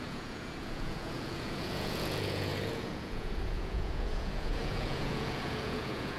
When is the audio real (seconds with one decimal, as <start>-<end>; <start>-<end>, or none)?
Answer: none